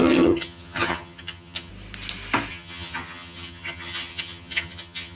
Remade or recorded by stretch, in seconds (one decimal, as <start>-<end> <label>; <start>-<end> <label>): 0.0-1.7 remade; 1.7-2.5 recorded; 2.5-5.2 remade